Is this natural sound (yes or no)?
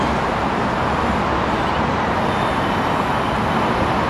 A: no